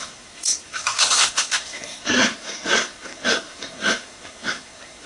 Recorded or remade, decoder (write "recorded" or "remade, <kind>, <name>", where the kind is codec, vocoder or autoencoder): remade, codec, SNAC